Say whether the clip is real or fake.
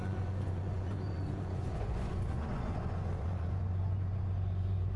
fake